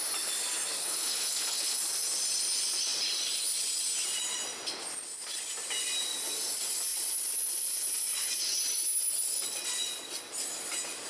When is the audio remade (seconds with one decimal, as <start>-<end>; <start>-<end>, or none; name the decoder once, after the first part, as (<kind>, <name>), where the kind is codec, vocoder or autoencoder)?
0.8-1.8 (codec, HILCodec)